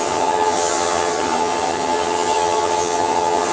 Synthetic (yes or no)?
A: yes